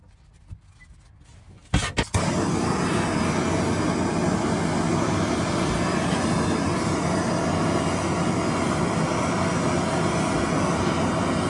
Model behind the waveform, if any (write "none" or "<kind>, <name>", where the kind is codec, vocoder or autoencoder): none